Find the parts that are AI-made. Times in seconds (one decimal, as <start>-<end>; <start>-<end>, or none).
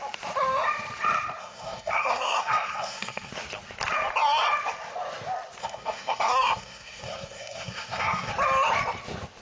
1.4-3.3; 5.6-8.3